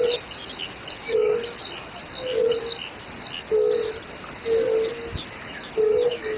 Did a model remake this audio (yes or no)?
no